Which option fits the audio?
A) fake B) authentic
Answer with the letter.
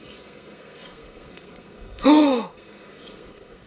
A